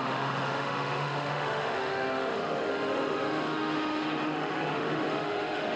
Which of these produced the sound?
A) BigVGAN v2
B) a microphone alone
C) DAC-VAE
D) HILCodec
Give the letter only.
C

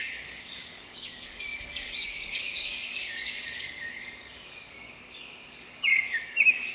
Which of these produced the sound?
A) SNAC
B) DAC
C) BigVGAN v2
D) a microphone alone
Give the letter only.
B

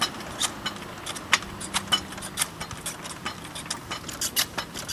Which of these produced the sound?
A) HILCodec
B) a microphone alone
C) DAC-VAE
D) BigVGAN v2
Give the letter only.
B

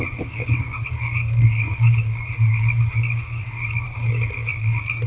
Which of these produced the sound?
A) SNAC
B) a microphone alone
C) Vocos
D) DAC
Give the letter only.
D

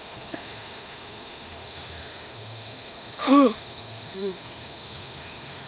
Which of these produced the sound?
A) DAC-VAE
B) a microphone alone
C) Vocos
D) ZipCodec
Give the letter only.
A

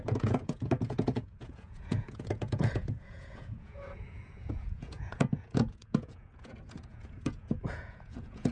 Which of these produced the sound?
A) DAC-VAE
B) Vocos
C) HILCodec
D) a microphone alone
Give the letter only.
B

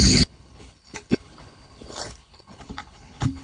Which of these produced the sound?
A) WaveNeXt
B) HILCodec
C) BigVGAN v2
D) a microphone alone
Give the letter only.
B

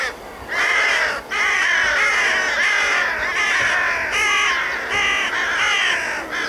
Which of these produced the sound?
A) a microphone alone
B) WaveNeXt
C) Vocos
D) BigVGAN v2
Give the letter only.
A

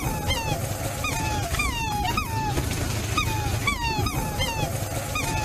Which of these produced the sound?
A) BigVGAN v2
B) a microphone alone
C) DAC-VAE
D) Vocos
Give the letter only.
B